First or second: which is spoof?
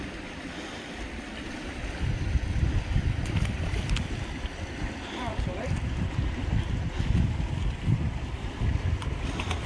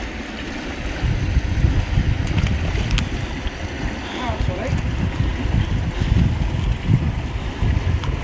first